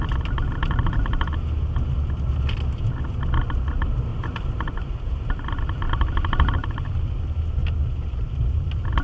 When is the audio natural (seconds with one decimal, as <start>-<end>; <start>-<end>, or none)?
0.0-4.1; 7.1-7.6; 8.3-9.0